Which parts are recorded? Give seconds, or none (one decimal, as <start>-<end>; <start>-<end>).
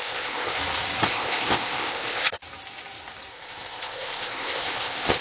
0.6-1.1; 2.4-3.3